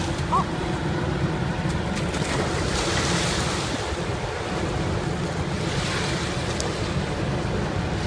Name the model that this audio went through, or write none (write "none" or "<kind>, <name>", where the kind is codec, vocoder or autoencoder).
none